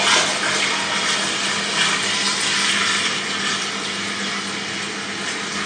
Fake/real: real